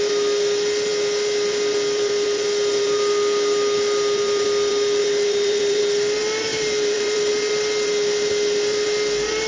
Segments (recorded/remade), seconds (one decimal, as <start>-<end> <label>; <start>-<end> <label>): 0.0-5.0 recorded; 5.0-5.8 remade; 5.8-6.5 recorded; 6.5-7.3 remade; 7.3-9.5 recorded

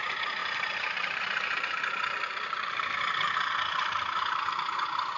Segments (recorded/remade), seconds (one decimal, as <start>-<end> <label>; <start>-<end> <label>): 0.0-0.4 recorded; 0.4-2.9 remade; 2.9-5.2 recorded

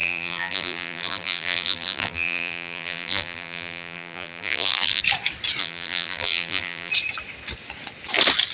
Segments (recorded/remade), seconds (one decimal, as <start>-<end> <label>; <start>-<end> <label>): 0.0-5.0 remade; 5.0-5.6 recorded; 5.6-6.9 remade; 6.9-8.5 recorded